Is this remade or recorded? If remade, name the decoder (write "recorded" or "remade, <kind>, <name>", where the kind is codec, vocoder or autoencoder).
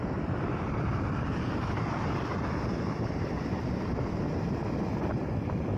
recorded